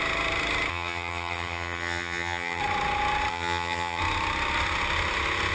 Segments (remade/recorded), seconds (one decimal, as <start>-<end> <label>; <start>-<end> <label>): 0.0-0.7 recorded; 0.7-2.6 remade; 2.6-3.3 recorded; 3.3-4.0 remade; 4.0-5.5 recorded